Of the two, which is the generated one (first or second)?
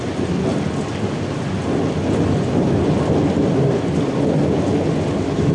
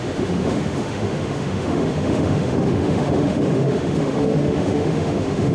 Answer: second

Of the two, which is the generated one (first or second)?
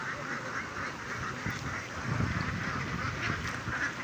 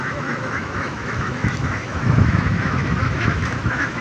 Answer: second